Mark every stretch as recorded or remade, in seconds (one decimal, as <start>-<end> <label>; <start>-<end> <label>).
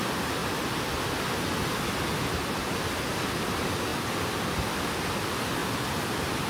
0.0-5.6 recorded; 5.6-6.5 remade